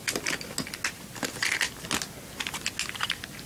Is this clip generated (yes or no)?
no